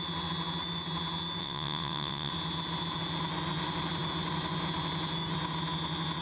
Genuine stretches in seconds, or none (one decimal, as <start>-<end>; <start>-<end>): 0.0-1.4; 2.3-6.2